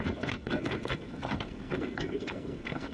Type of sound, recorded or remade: remade